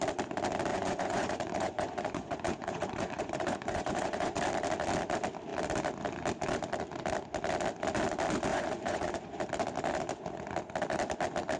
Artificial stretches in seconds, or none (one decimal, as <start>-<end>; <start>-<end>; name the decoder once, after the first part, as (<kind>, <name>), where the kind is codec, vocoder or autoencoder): 0.7-4.4 (vocoder, Vocos); 8.5-9.4